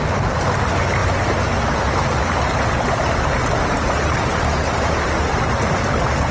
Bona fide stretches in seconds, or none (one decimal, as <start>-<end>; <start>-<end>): 0.0-6.3